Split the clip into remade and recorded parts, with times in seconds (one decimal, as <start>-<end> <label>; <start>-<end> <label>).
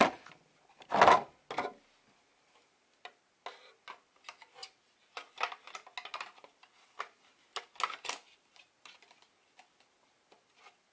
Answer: 0.0-10.9 recorded